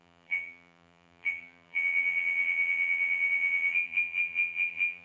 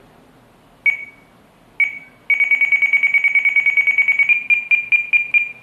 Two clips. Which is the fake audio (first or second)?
first